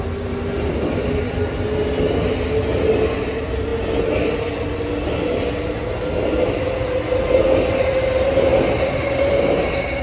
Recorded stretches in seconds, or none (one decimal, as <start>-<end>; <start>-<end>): 0.0-10.0